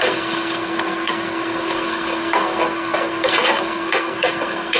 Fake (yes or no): yes